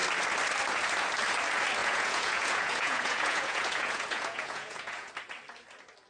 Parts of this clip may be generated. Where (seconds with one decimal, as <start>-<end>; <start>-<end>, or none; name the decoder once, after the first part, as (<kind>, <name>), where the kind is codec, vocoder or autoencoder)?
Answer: 1.8-5.1 (vocoder, Vocos)